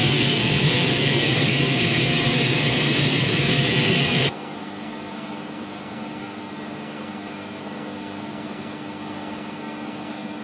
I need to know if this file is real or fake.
fake